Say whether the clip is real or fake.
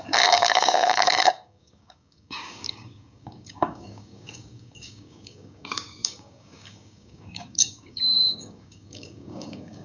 fake